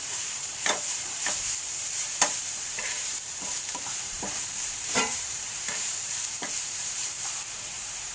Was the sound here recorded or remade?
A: remade